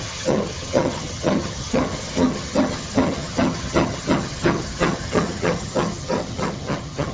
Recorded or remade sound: remade